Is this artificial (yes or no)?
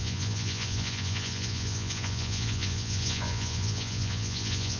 yes